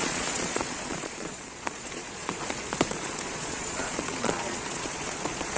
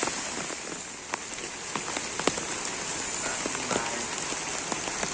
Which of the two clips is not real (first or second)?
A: first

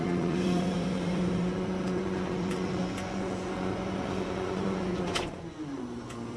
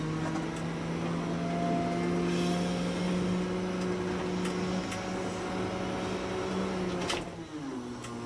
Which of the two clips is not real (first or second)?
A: first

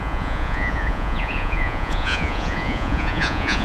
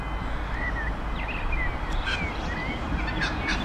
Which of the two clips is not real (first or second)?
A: first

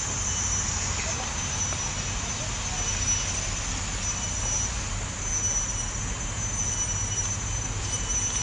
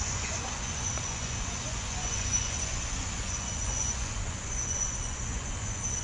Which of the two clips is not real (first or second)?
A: second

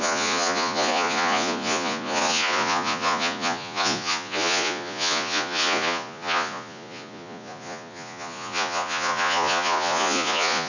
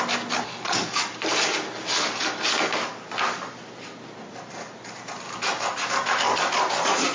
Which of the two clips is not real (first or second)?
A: first